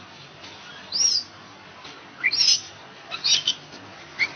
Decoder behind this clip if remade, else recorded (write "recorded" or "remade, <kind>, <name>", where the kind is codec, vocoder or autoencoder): recorded